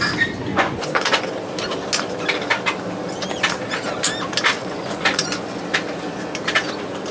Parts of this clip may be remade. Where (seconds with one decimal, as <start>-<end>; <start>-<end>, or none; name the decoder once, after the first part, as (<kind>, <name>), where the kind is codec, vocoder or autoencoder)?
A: 0.5-1.2 (vocoder, Vocos); 4.6-5.6